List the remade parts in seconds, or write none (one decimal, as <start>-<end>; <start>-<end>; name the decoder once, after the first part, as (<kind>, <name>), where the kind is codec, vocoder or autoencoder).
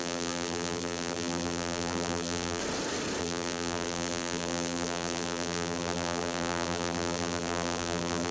0.0-2.6 (vocoder, BigVGAN v2); 3.2-8.3